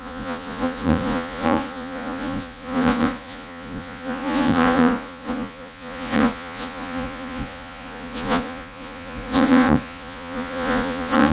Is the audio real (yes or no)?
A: no